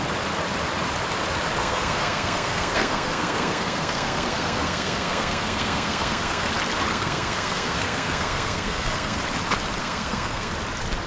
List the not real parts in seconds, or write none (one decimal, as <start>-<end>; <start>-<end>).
1.6-6.5; 6.9-9.2; 9.8-10.5